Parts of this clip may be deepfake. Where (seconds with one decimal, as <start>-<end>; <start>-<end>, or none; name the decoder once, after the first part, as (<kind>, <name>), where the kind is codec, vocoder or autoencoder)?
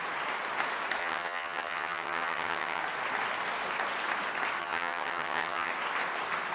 1.0-2.8 (vocoder, HiFi-GAN); 4.6-5.7